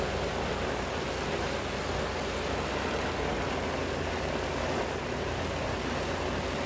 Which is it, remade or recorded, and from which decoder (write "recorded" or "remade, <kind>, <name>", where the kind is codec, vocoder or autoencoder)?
recorded